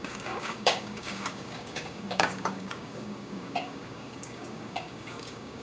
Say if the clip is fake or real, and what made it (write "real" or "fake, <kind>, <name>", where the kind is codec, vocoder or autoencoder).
fake, codec, DAC